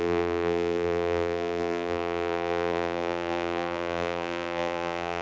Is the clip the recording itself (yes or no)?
no